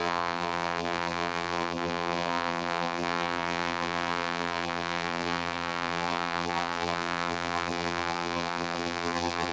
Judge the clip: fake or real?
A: fake